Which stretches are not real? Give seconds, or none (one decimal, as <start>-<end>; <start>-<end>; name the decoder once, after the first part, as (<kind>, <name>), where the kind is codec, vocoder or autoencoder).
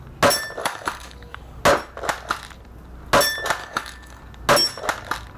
0.6-1.6 (codec, DAC); 3.6-4.2